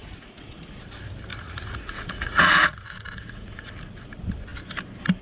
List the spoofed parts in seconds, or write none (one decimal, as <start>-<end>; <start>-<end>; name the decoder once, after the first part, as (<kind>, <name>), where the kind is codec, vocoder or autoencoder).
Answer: 0.0-0.6 (vocoder, Vocos); 1.3-3.7